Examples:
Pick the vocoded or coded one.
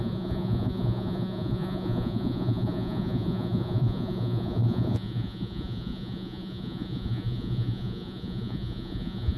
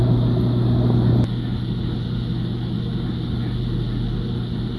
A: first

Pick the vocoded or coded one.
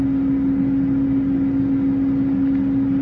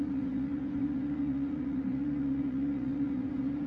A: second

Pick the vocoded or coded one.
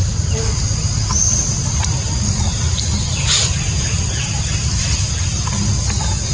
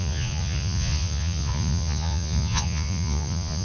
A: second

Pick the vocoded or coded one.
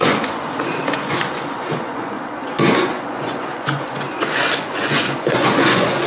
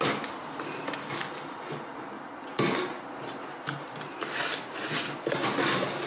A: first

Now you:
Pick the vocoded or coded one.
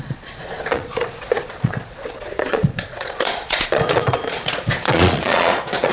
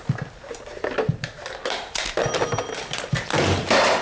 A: first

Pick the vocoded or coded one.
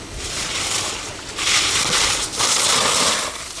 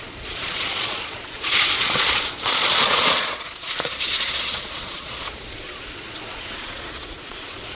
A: second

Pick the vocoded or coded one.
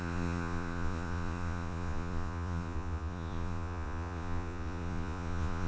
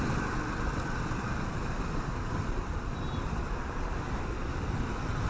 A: first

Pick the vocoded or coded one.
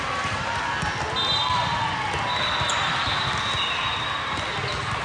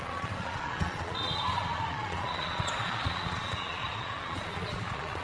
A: second